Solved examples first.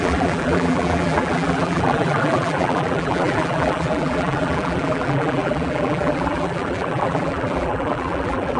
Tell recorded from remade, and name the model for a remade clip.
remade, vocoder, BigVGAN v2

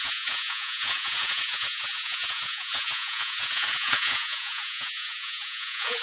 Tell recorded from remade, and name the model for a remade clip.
remade, vocoder, Vocos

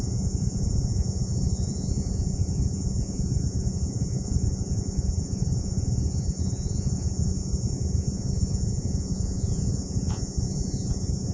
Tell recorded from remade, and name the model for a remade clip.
remade, vocoder, Vocos